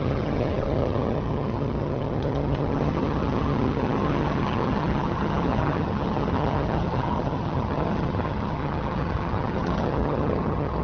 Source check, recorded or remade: remade